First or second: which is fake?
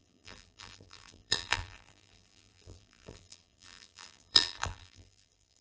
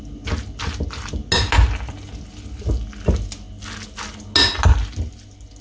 first